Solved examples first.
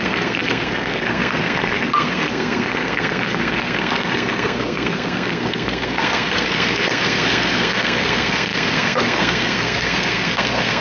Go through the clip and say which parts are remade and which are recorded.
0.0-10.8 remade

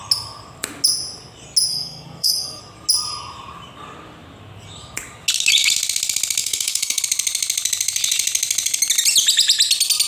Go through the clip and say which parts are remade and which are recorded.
0.0-1.7 recorded; 1.7-2.6 remade; 2.6-6.4 recorded; 6.4-7.0 remade; 7.0-10.1 recorded

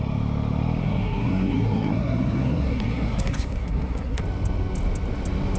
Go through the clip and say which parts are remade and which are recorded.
0.0-0.8 recorded; 0.8-4.2 remade; 4.2-5.6 recorded

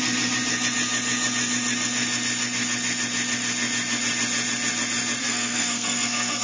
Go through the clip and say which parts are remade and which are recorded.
0.0-5.2 recorded; 5.2-6.4 remade

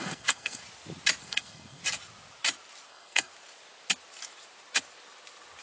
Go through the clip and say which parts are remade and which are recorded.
0.0-0.6 remade; 0.6-1.2 recorded; 1.2-1.8 remade; 1.8-2.9 recorded; 2.9-3.3 remade; 3.3-5.6 recorded

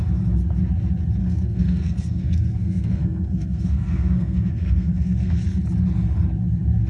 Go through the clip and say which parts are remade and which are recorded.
0.0-1.2 recorded; 1.2-5.3 remade; 5.3-6.9 recorded

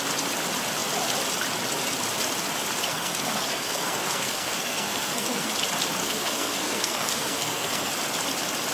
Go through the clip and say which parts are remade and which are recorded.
0.0-2.9 recorded; 2.9-5.5 remade; 5.5-6.0 recorded; 6.0-7.9 remade; 7.9-8.7 recorded